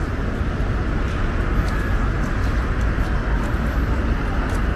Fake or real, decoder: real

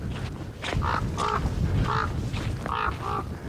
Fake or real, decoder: real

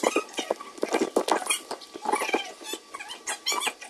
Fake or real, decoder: real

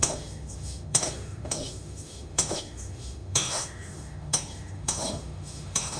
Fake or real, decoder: fake, autoencoder, DAC-VAE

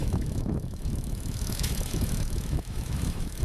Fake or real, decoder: fake, autoencoder, DAC-VAE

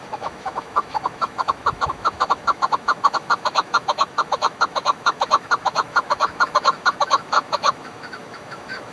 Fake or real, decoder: fake, autoencoder, DAC-VAE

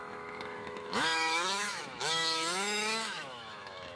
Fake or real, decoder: fake, autoencoder, DAC-VAE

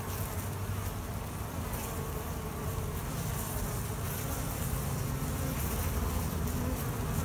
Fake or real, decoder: real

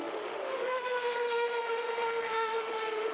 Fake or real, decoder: fake, autoencoder, DAC-VAE